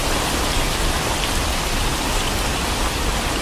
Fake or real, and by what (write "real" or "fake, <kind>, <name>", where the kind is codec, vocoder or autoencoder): real